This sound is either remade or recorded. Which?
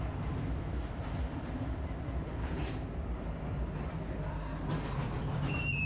recorded